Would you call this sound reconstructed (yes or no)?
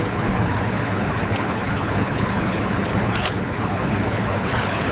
yes